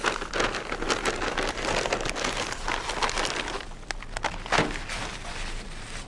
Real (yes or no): yes